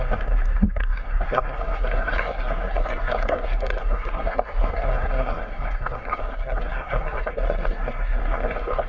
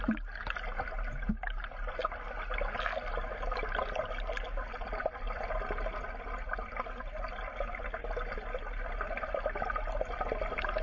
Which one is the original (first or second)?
second